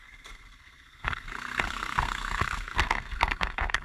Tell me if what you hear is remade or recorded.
remade